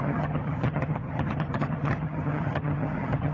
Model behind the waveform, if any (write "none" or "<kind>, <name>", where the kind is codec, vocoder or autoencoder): vocoder, HiFi-GAN